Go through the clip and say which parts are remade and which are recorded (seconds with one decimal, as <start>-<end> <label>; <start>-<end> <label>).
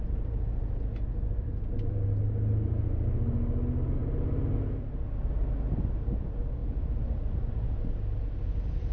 0.0-8.9 recorded